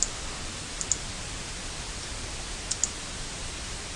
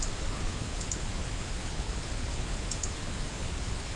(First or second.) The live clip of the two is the first